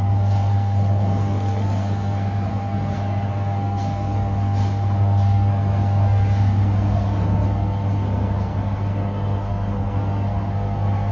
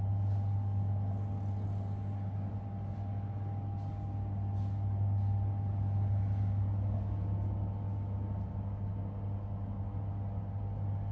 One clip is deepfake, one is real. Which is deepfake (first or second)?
first